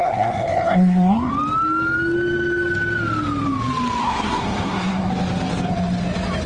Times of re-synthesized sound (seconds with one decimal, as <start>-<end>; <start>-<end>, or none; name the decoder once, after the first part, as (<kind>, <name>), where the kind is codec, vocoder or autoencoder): 0.0-1.3 (codec, SNAC); 4.0-5.1